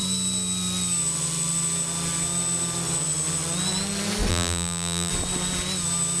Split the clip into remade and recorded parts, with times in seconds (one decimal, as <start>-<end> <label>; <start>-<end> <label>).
0.0-4.3 recorded; 4.3-5.1 remade; 5.1-6.2 recorded